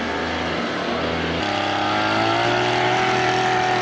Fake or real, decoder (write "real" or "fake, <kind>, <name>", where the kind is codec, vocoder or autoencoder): real